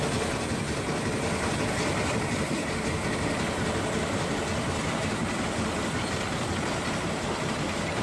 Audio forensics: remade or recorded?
recorded